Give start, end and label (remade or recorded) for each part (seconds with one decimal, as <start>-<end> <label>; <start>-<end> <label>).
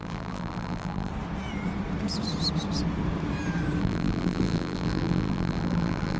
0.0-1.1 remade; 1.1-3.8 recorded; 3.8-6.2 remade